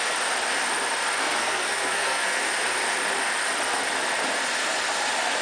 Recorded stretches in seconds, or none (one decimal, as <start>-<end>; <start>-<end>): 0.0-1.2; 2.4-5.4